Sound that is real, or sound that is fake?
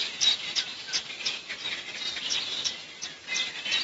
real